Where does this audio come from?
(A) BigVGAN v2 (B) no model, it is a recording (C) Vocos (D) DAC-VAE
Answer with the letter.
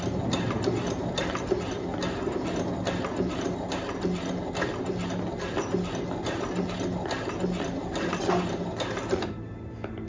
B